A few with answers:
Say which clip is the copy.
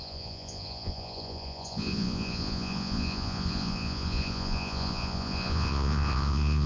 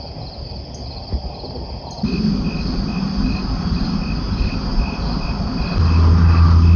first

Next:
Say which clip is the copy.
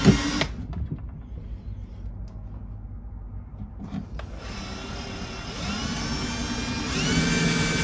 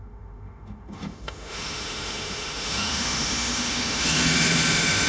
second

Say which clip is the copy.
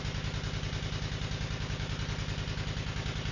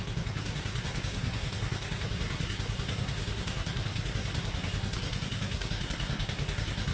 second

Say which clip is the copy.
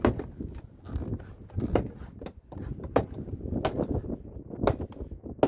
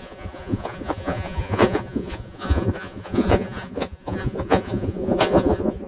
second